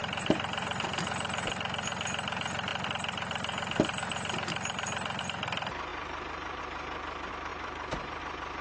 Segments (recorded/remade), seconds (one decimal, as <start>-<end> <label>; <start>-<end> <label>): 0.0-5.9 recorded; 5.9-6.6 remade; 6.6-7.5 recorded; 7.5-8.2 remade; 8.2-8.6 recorded